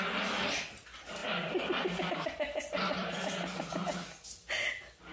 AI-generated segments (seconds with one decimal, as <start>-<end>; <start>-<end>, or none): 1.2-2.1; 3.0-3.7